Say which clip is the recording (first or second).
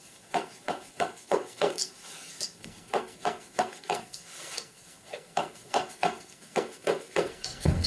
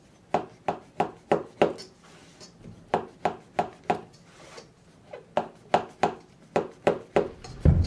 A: second